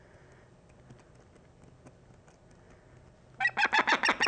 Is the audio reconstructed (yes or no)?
no